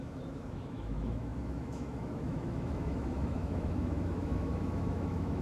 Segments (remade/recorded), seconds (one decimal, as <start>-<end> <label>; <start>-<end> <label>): 0.0-5.4 remade